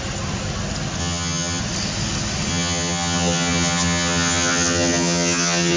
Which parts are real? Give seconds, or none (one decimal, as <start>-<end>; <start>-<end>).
0.0-1.0; 1.6-2.5